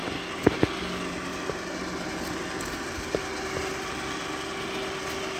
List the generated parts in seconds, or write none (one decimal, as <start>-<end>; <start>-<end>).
none

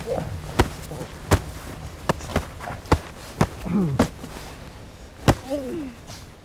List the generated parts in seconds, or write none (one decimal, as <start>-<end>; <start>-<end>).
2.3-3.1; 3.7-5.9

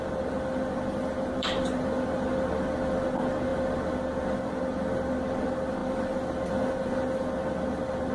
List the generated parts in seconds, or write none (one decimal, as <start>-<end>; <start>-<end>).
0.0-8.1

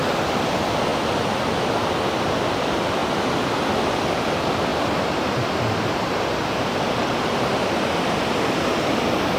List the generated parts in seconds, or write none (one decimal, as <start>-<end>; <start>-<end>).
0.0-0.9; 2.5-3.0; 4.0-9.4

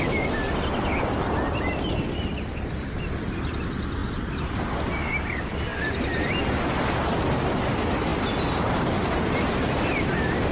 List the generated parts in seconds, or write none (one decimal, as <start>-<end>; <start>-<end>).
4.0-4.7

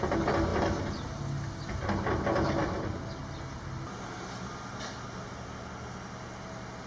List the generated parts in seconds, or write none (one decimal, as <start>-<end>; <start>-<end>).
none